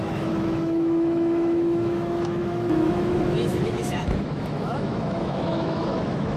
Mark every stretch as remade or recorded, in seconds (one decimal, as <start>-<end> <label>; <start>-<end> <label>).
0.0-6.4 remade